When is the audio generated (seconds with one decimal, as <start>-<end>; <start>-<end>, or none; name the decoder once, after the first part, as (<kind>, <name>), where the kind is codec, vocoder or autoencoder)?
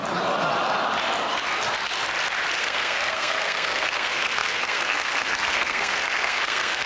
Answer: 2.6-6.9 (codec, SNAC)